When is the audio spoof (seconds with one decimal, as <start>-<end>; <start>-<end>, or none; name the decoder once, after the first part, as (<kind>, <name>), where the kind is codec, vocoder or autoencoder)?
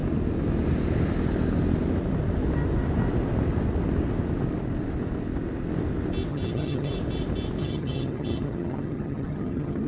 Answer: 6.3-6.9 (vocoder, HiFi-GAN); 7.6-9.9